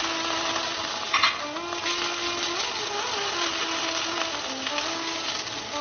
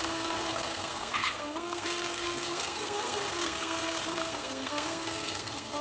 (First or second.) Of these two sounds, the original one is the first